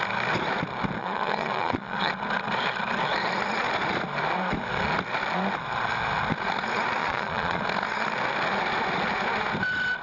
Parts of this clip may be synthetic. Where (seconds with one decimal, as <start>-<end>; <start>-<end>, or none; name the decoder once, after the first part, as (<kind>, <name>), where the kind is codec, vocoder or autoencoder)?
1.0-2.1 (vocoder, Vocos); 7.0-7.6